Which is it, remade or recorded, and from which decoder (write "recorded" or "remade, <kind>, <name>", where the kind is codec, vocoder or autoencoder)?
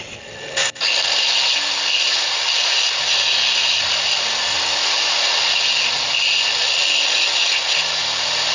recorded